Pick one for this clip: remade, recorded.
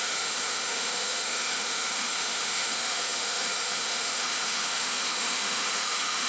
remade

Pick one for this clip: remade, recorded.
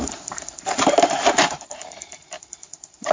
remade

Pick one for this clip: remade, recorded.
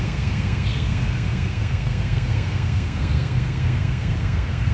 remade